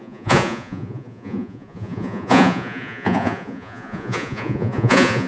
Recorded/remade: remade